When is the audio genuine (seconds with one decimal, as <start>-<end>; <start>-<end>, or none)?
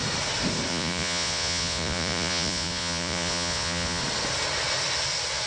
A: 0.0-0.7; 4.0-5.5